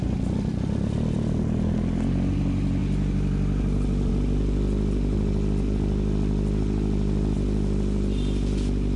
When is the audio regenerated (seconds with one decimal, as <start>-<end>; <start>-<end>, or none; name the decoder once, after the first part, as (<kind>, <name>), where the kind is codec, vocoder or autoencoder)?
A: none